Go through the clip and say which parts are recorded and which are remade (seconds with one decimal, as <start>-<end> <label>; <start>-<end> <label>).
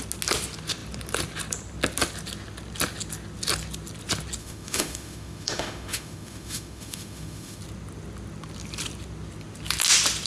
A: 0.0-4.4 recorded; 4.4-7.6 remade; 7.6-10.3 recorded